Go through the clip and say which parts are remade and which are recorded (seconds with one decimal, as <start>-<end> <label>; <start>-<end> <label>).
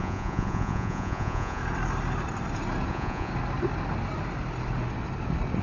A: 0.0-1.6 remade; 1.6-2.9 recorded; 2.9-3.3 remade; 3.3-5.6 recorded